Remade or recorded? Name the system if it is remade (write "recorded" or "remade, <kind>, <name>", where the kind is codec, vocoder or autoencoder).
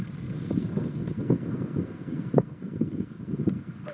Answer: remade, codec, SNAC